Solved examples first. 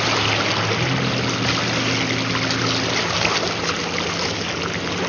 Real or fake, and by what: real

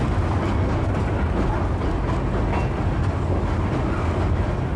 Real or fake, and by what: real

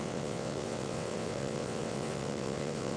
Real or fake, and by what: fake, vocoder, WaveNeXt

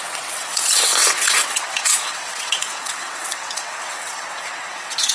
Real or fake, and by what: fake, vocoder, WaveNeXt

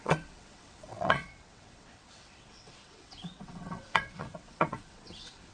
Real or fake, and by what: fake, vocoder, WaveNeXt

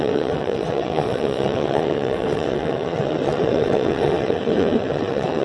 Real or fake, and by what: fake, vocoder, WaveNeXt